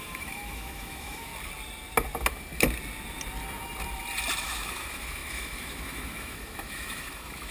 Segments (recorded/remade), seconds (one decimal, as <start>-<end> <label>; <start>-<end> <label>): 0.0-1.3 remade; 1.3-4.4 recorded; 4.4-7.5 remade